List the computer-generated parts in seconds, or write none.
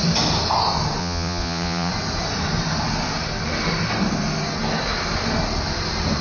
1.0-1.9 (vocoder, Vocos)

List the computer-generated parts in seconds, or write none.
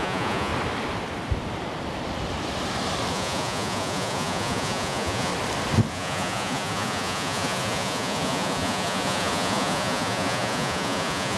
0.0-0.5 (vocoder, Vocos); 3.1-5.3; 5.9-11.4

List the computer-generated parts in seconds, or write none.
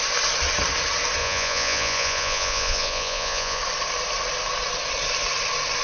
1.2-3.6 (vocoder, Vocos)